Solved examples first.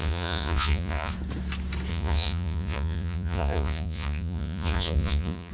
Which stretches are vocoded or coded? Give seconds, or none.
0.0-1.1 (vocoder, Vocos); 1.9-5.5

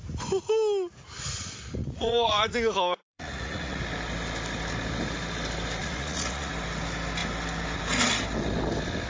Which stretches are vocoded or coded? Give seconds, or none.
1.8-3.8 (vocoder, Vocos); 5.8-6.5